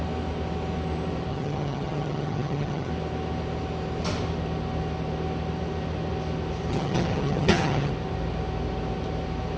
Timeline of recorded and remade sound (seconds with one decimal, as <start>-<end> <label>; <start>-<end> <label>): 0.0-1.3 recorded; 1.3-2.9 remade; 2.9-6.7 recorded; 6.7-7.9 remade; 7.9-9.6 recorded